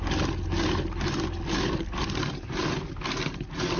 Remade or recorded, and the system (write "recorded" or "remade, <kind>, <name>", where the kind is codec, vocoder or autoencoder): recorded